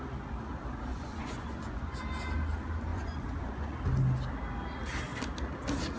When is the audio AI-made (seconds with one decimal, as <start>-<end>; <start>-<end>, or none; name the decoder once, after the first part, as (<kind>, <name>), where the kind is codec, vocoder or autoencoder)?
0.9-2.0 (vocoder, Vocos); 2.9-3.8